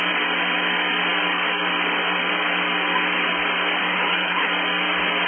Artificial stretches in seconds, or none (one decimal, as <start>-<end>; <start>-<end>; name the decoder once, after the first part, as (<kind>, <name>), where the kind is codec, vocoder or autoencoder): 3.9-4.5 (codec, HILCodec)